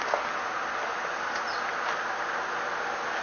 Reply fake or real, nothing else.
real